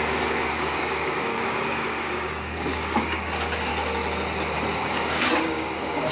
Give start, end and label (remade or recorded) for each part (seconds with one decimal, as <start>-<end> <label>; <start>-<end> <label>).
0.0-3.7 remade; 3.7-4.8 recorded; 4.8-6.1 remade

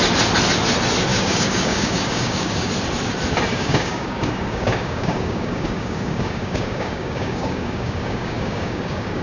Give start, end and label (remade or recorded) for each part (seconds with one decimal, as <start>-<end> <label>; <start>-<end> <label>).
0.0-1.1 recorded; 1.1-2.7 remade; 2.7-3.5 recorded; 3.5-9.2 remade

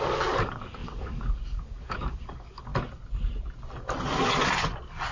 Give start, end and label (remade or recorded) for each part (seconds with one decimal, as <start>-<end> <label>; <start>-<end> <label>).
0.0-2.7 remade; 2.7-5.1 recorded

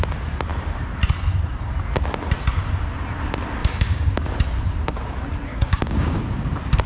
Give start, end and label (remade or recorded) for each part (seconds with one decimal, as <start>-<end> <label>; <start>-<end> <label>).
0.0-3.6 recorded; 3.6-4.3 remade; 4.3-5.5 recorded; 5.5-6.2 remade; 6.2-6.9 recorded

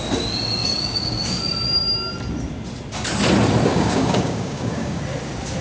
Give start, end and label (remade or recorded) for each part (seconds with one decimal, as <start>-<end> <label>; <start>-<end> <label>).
0.0-0.6 recorded; 0.6-1.4 remade; 1.4-3.7 recorded; 3.7-5.0 remade; 5.0-5.6 recorded

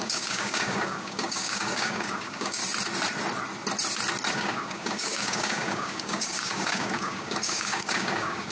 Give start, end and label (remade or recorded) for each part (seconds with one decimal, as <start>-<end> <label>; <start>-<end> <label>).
0.0-2.6 remade; 2.6-4.3 recorded; 4.3-8.5 remade

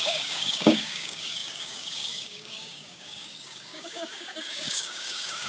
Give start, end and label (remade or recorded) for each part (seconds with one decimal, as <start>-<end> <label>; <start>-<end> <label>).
0.0-5.5 remade